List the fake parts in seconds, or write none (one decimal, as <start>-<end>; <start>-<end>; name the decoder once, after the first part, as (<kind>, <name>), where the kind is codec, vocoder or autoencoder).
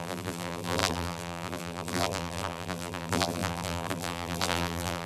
0.0-5.1 (vocoder, BigVGAN v2)